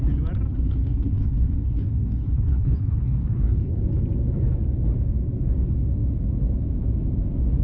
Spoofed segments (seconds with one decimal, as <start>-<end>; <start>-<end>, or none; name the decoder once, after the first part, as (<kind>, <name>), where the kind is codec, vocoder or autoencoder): 0.5-3.8 (codec, HILCodec)